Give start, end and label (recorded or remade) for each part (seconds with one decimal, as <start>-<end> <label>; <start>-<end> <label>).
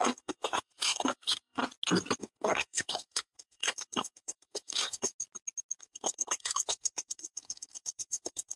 0.0-1.6 remade; 1.6-2.2 recorded; 2.2-5.1 remade; 5.1-5.8 recorded; 5.8-8.6 remade